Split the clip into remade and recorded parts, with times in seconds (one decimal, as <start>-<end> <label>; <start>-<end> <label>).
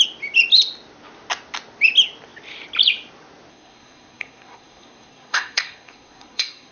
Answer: 0.0-3.5 recorded; 3.5-6.7 remade